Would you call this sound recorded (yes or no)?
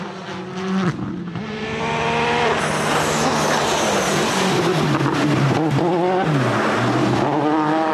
yes